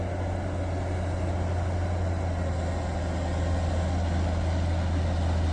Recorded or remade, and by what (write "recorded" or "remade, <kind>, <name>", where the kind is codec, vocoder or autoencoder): recorded